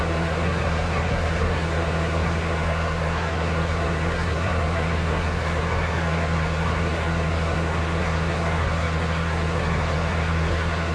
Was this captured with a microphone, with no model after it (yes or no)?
no